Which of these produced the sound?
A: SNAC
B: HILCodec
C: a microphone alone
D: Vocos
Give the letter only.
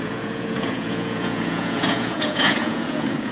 D